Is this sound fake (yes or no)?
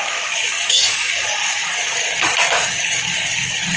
yes